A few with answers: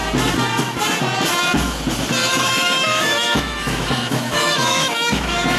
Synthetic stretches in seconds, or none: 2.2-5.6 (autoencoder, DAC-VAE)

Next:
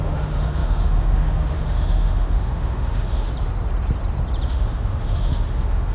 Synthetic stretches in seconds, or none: 0.0-3.3 (autoencoder, DAC-VAE); 4.5-5.9

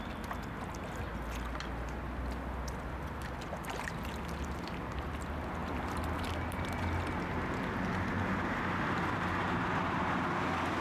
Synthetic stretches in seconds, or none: none